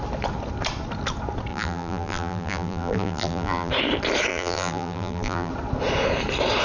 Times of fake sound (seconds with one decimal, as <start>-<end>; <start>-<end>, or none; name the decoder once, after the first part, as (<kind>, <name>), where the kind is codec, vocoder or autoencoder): 1.5-3.7 (vocoder, BigVGAN v2); 4.3-5.5